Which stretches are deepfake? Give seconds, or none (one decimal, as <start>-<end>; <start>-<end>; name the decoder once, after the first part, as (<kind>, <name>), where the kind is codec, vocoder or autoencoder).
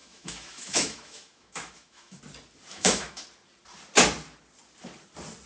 0.0-2.2 (autoencoder, DAC-VAE); 2.7-3.2